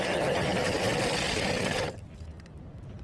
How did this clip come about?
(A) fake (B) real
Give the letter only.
B